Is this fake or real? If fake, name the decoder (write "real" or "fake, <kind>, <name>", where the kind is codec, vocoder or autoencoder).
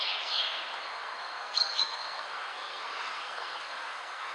fake, codec, SNAC